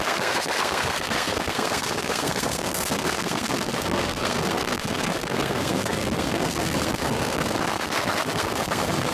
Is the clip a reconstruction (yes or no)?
yes